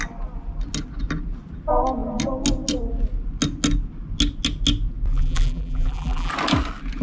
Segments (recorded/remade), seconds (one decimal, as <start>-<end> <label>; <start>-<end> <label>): 0.0-5.1 recorded; 5.1-6.3 remade; 6.3-7.0 recorded